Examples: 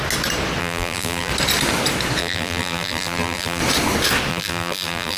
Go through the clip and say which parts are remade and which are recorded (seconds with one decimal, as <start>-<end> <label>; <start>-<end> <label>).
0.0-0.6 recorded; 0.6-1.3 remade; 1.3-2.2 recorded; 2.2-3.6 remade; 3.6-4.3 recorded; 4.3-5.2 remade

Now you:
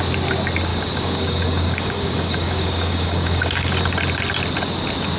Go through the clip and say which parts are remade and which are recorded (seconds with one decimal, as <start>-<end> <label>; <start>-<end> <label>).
0.0-0.7 recorded; 0.7-3.8 remade; 3.8-5.2 recorded

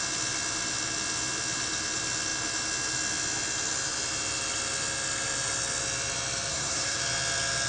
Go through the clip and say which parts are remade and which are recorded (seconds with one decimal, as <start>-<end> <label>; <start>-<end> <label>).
0.0-6.5 recorded; 6.5-7.0 remade; 7.0-7.7 recorded

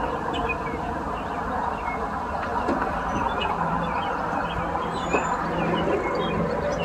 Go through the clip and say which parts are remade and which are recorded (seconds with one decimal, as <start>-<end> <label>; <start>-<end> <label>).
0.0-6.8 recorded

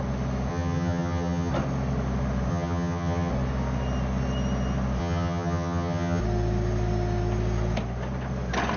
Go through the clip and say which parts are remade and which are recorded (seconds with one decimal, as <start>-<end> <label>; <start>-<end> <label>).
0.0-0.5 recorded; 0.5-1.5 remade; 1.5-2.5 recorded; 2.5-3.3 remade; 3.3-5.0 recorded; 5.0-6.2 remade; 6.2-8.8 recorded

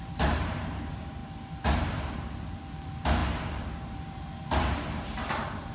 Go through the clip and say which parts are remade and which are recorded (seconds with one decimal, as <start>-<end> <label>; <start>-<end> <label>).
0.0-1.2 remade; 1.2-1.8 recorded; 1.8-5.7 remade

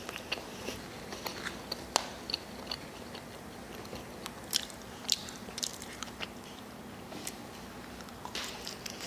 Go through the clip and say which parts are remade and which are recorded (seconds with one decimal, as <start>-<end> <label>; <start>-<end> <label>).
0.0-5.2 recorded; 5.2-6.7 remade; 6.7-9.1 recorded